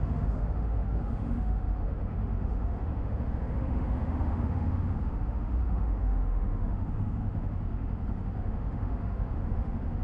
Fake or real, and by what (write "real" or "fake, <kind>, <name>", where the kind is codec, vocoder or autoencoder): fake, autoencoder, DAC-VAE